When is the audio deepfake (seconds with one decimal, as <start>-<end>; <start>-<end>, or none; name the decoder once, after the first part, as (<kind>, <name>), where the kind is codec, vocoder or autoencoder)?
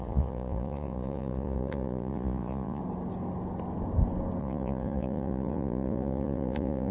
0.0-2.8 (vocoder, Vocos); 4.4-6.9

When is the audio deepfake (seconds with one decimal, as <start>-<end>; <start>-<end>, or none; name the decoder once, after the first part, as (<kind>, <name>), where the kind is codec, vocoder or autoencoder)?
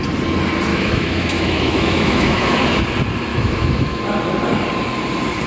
0.7-2.8 (autoencoder, DAC-VAE); 3.3-4.0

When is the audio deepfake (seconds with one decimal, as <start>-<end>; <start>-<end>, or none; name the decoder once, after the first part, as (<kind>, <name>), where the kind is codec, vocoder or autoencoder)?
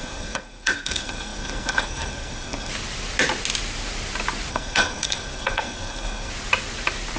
0.0-2.7 (codec, SNAC); 4.5-6.3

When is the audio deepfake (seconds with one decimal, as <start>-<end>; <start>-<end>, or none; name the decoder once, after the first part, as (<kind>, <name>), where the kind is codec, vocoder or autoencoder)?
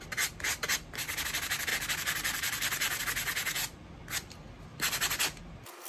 1.7-3.0 (vocoder, BigVGAN v2)